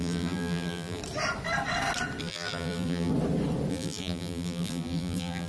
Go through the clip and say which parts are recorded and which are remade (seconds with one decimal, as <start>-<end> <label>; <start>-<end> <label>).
0.0-1.0 remade; 1.0-2.2 recorded; 2.2-3.1 remade; 3.1-3.7 recorded; 3.7-5.5 remade